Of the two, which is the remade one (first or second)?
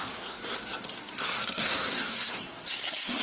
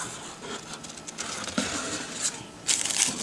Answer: first